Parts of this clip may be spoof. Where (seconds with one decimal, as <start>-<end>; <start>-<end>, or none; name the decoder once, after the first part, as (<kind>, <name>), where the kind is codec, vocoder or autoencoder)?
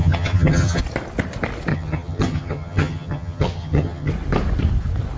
0.0-0.8 (vocoder, HiFi-GAN); 1.7-4.1